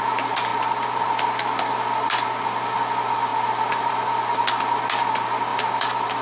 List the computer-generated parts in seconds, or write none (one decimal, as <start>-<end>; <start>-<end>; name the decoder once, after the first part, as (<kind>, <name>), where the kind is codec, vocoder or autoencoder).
0.5-1.8 (vocoder, BigVGAN v2); 3.3-3.9; 5.5-6.2